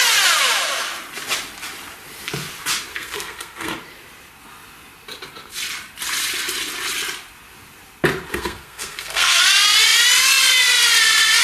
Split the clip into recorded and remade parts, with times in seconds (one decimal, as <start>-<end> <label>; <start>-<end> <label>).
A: 0.0-2.9 recorded; 2.9-3.7 remade; 3.7-8.3 recorded; 8.3-9.4 remade; 9.4-11.4 recorded